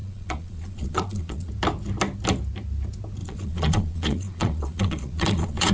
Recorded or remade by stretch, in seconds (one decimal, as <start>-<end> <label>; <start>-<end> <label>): 0.0-1.5 remade; 1.5-3.2 recorded; 3.2-5.7 remade